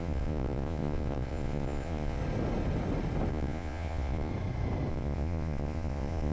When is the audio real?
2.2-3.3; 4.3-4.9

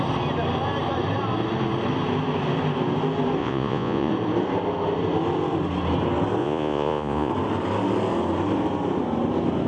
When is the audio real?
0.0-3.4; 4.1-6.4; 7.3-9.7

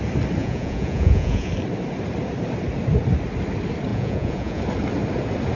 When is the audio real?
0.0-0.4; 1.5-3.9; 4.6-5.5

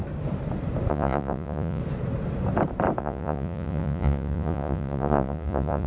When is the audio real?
0.0-0.9; 1.8-3.0

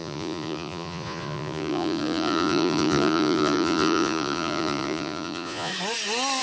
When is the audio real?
5.7-6.4

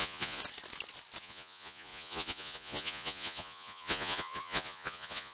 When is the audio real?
0.4-1.2